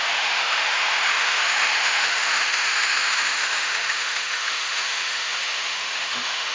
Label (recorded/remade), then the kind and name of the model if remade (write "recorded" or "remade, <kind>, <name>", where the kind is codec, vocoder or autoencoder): remade, autoencoder, DAC-VAE